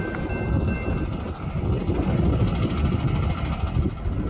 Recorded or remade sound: recorded